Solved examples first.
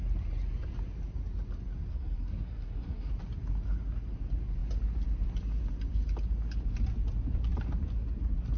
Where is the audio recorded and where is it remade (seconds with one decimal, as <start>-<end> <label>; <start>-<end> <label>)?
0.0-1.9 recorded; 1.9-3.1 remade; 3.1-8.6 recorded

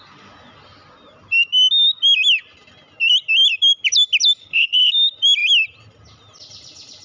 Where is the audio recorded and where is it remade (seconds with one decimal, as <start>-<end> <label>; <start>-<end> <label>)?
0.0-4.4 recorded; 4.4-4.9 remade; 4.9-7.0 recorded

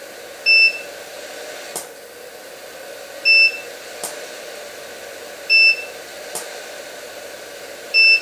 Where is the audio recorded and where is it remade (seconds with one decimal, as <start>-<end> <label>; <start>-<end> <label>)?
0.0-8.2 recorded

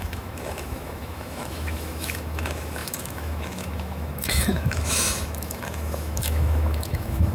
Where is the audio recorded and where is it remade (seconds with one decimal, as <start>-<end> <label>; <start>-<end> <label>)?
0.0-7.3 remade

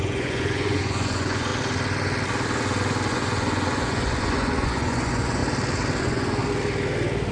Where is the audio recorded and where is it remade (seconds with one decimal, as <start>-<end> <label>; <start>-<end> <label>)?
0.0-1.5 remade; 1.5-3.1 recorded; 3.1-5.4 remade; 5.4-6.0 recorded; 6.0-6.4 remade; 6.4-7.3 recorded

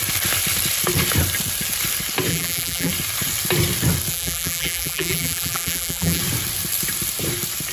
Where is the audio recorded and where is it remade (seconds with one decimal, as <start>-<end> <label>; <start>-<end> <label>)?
0.0-2.3 recorded; 2.3-2.9 remade; 2.9-4.1 recorded; 4.1-6.2 remade; 6.2-7.7 recorded